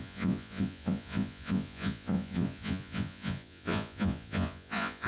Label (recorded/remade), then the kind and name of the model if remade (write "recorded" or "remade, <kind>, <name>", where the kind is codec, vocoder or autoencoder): remade, vocoder, Vocos